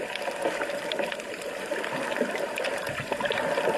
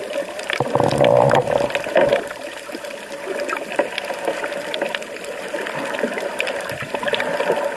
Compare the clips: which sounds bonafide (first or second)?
second